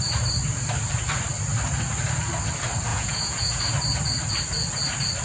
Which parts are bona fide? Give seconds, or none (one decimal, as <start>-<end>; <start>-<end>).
0.0-2.9; 3.6-5.2